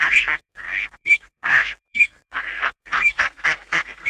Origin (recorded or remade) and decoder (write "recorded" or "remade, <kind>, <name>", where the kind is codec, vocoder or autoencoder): remade, codec, SNAC